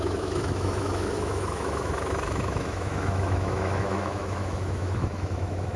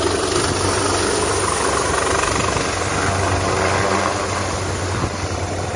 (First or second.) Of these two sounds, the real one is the second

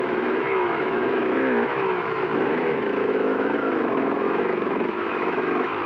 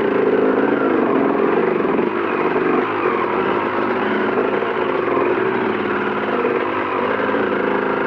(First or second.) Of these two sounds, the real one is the second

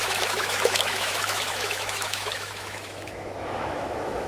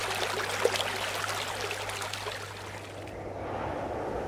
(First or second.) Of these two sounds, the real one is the second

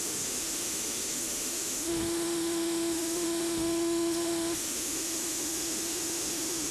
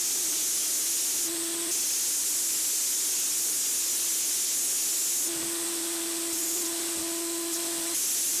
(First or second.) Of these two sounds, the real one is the second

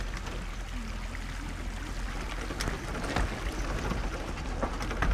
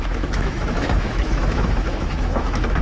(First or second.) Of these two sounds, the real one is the first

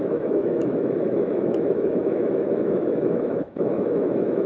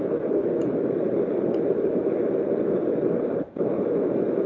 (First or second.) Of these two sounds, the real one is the second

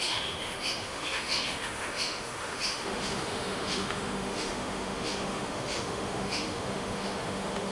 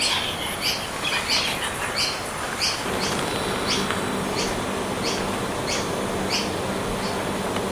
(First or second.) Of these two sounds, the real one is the second